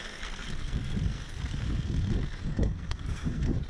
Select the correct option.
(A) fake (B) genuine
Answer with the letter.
A